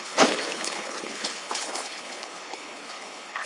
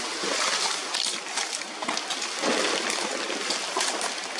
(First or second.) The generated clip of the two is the first